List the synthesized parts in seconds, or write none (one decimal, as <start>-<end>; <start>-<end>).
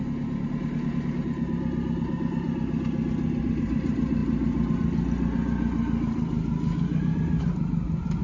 none